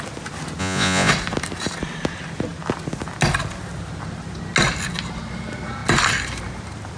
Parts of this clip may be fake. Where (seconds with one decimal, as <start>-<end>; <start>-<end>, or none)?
0.6-1.1